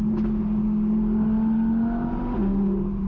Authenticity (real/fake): real